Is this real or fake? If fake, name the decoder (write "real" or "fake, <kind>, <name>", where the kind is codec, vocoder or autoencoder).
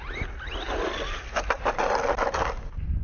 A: real